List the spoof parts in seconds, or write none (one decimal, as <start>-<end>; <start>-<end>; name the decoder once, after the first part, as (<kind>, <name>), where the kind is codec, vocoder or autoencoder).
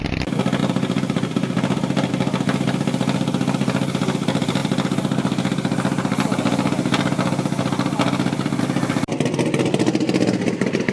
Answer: 0.6-2.1 (vocoder, BigVGAN v2)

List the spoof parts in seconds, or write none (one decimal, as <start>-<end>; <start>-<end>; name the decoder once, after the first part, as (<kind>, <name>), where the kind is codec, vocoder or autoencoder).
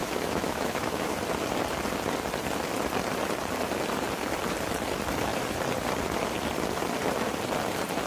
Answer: 0.0-1.1 (autoencoder, DAC-VAE)